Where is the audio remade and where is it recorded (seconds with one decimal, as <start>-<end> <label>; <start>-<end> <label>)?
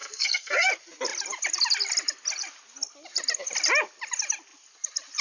0.0-0.7 remade; 0.7-5.2 recorded